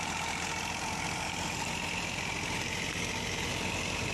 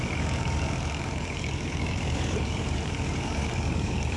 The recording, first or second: first